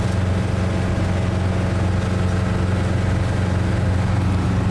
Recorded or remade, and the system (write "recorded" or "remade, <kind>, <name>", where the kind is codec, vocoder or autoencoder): recorded